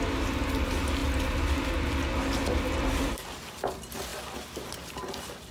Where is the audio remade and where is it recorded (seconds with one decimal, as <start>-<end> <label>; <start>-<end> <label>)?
0.0-5.5 recorded